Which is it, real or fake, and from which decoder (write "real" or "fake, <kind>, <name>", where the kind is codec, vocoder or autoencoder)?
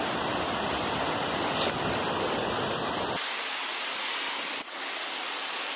real